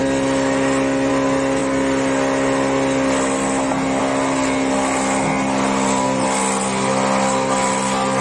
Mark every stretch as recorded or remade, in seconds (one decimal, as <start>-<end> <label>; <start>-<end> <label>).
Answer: 0.0-8.2 recorded